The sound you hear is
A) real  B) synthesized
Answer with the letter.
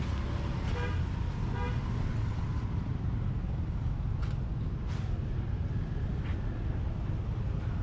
A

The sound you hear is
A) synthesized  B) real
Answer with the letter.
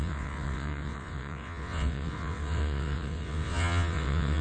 A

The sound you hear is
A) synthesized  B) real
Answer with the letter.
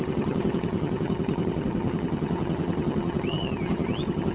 A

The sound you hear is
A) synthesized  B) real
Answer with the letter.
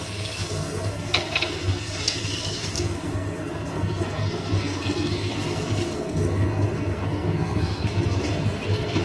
A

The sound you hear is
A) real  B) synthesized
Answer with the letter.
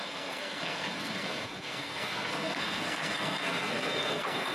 B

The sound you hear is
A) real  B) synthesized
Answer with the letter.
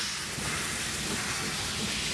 A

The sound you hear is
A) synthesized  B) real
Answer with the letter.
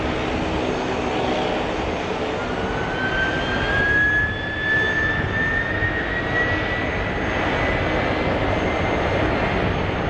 B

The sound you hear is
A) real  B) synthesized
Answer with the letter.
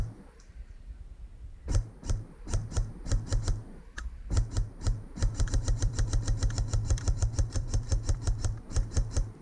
B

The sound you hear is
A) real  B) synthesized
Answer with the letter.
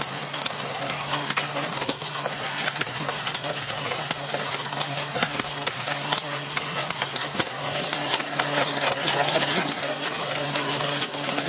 B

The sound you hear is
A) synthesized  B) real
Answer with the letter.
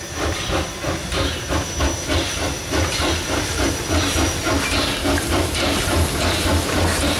B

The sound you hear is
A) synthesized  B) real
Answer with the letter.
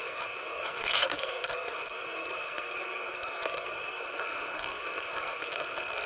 A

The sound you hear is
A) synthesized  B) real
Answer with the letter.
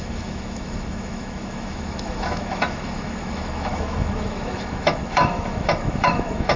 A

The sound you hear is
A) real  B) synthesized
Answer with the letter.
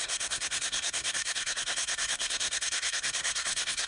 B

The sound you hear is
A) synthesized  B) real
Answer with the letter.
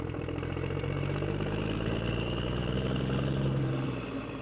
A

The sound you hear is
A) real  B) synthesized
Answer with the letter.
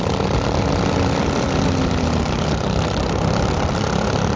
A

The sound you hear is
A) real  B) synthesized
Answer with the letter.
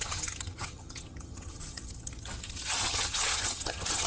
B